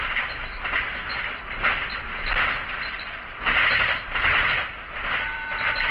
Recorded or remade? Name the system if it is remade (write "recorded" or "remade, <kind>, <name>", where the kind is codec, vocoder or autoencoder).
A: remade, vocoder, BigVGAN v2